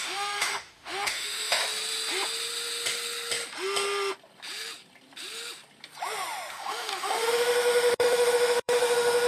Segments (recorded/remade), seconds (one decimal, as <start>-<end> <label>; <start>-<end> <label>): 0.0-1.6 remade; 1.6-6.5 recorded; 6.5-9.3 remade